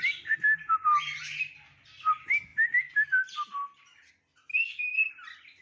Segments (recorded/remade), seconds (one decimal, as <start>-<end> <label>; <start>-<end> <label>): 0.0-4.5 recorded; 4.5-5.1 remade; 5.1-5.6 recorded